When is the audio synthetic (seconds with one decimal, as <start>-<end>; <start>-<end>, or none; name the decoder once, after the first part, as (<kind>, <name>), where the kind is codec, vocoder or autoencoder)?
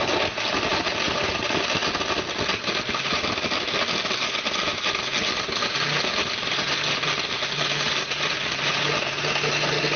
0.7-1.3 (vocoder, BigVGAN v2)